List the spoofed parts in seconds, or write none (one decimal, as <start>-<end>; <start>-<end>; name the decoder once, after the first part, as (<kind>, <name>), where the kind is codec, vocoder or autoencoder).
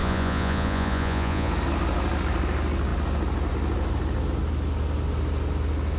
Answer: 0.0-1.5 (vocoder, Vocos)